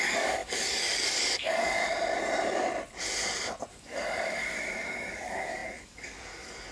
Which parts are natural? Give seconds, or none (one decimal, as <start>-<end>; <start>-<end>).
1.8-3.7